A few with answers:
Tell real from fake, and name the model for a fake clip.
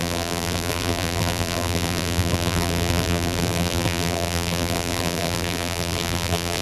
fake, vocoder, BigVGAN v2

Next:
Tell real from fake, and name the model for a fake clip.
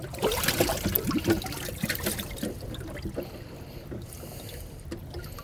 real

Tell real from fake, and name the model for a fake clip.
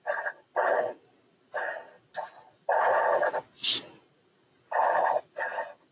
real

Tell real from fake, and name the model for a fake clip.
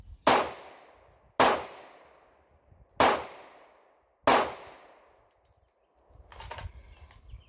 real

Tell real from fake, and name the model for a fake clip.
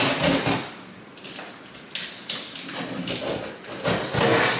real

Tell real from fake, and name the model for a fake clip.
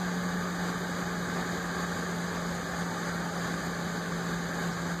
real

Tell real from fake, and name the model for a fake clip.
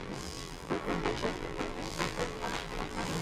fake, vocoder, BigVGAN v2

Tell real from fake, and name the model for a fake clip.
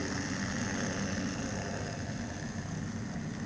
real